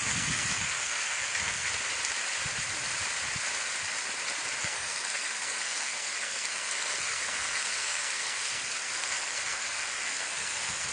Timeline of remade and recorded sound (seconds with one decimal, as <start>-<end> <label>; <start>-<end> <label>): 0.0-1.7 remade; 1.7-4.6 recorded; 4.6-10.9 remade